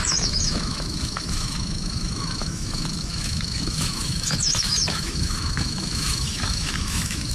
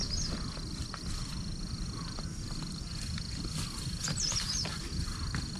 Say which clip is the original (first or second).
second